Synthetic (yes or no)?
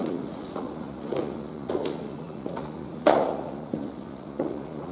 yes